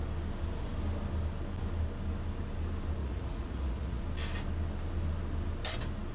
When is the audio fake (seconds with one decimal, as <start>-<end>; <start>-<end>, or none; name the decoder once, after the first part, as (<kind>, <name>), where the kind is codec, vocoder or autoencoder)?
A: 3.0-4.0 (vocoder, Vocos)